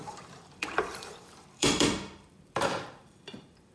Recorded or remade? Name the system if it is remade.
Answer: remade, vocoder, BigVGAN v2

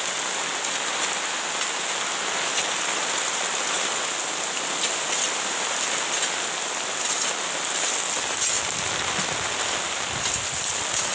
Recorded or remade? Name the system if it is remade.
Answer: recorded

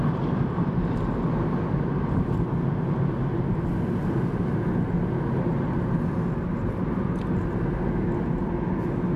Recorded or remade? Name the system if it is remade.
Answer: recorded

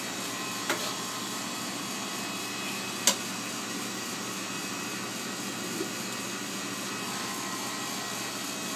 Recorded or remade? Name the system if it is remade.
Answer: recorded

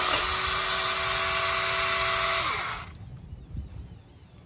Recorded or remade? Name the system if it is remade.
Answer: recorded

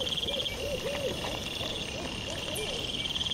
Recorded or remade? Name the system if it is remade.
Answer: recorded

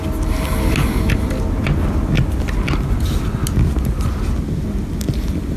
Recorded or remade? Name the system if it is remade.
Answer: recorded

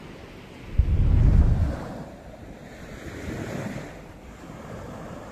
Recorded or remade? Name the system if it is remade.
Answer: recorded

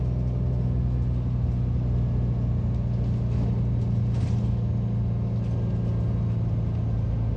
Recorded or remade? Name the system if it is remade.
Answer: recorded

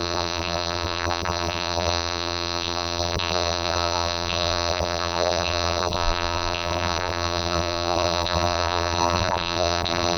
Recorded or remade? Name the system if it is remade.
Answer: remade, vocoder, BigVGAN v2